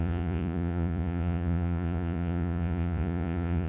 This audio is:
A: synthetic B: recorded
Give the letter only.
A